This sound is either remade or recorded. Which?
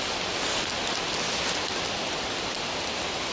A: recorded